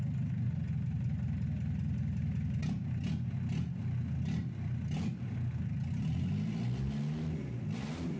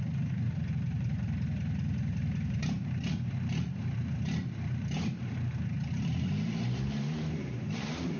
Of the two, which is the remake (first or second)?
second